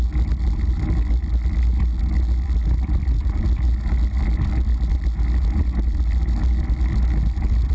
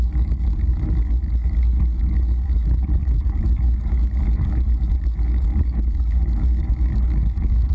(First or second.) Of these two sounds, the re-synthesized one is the second